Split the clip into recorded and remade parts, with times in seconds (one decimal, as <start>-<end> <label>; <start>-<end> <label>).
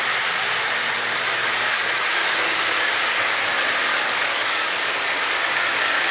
0.0-1.4 recorded; 1.4-2.0 remade; 2.0-3.9 recorded; 3.9-4.8 remade; 4.8-6.1 recorded